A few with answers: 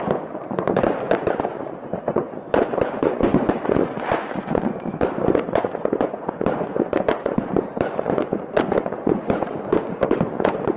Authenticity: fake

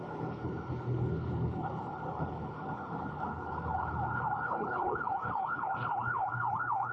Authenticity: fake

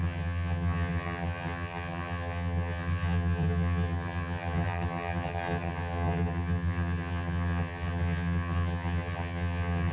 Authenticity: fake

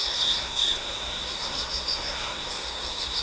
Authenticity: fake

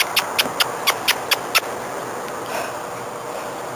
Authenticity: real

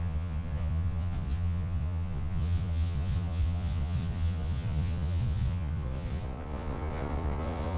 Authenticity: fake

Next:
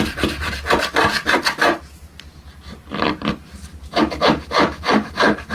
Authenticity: fake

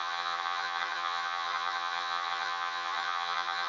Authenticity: fake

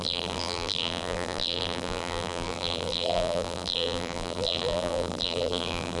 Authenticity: fake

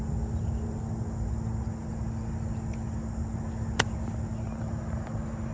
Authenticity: real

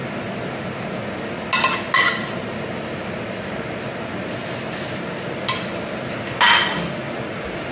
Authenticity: real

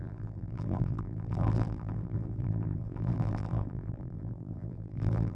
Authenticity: fake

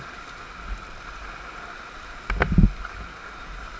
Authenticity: real